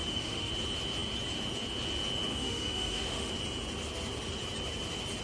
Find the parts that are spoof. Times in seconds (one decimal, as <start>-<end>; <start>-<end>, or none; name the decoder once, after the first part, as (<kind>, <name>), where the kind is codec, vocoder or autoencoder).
0.0-0.5 (autoencoder, DAC-VAE); 2.3-3.3